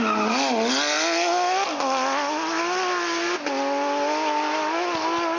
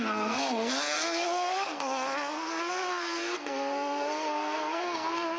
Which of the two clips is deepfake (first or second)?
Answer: second